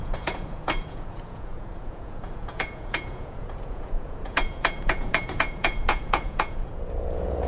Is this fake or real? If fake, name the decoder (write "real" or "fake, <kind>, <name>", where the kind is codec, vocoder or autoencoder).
fake, vocoder, Vocos